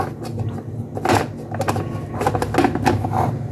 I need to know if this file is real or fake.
real